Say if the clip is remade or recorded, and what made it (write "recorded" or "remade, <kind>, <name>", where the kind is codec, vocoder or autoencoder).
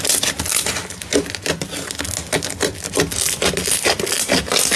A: recorded